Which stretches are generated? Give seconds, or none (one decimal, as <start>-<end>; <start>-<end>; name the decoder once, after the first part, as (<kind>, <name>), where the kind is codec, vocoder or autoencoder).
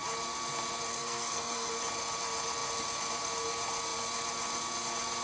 0.9-1.7 (codec, SNAC)